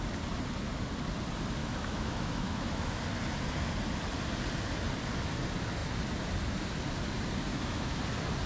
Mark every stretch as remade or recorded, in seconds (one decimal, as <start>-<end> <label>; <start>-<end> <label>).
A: 0.0-1.6 recorded; 1.6-3.0 remade; 3.0-7.5 recorded; 7.5-8.0 remade; 8.0-8.5 recorded